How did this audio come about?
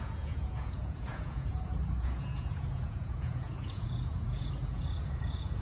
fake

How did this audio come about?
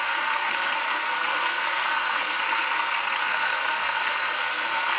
fake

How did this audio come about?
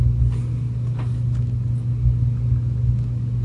real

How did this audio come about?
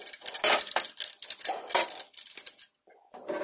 real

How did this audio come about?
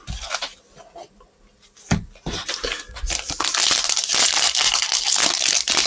real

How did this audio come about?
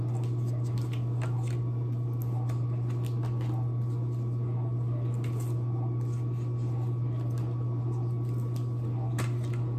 real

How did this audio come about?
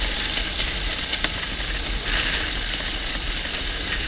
real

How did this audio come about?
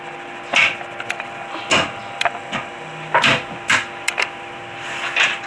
real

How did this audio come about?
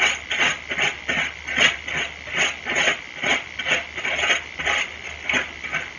real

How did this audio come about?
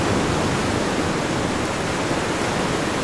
real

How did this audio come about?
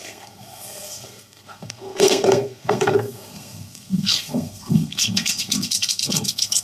fake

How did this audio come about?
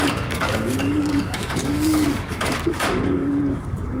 fake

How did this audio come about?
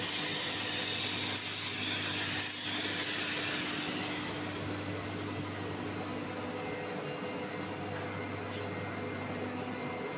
real